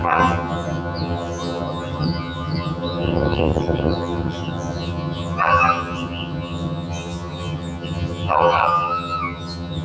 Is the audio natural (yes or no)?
no